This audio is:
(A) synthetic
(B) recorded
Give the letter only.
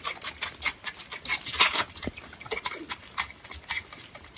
B